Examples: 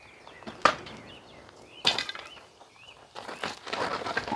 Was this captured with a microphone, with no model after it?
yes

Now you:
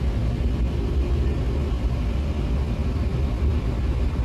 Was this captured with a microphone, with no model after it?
yes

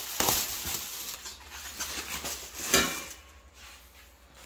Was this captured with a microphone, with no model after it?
yes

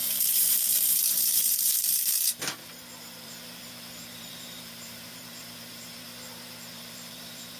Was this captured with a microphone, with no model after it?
no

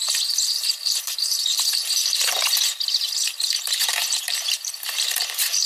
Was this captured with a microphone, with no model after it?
no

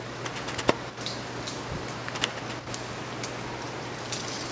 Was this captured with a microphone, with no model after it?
yes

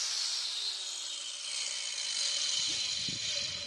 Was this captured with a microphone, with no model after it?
yes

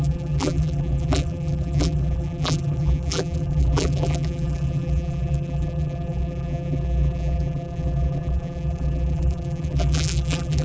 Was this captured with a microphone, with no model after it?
no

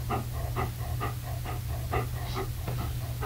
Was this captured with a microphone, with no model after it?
yes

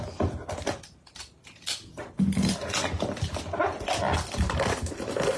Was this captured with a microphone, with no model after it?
yes